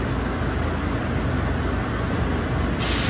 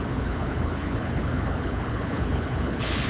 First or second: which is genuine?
first